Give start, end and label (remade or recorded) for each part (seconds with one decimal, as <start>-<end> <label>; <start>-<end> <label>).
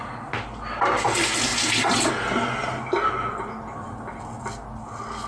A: 0.0-5.3 recorded